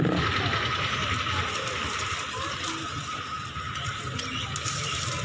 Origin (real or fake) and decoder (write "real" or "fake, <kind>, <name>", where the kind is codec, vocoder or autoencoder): real